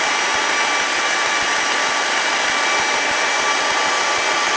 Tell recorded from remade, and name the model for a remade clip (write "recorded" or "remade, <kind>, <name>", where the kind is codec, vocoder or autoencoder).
recorded